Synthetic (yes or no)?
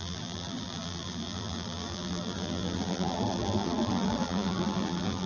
yes